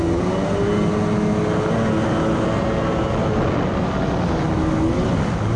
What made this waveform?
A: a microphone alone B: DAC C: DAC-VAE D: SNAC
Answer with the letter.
A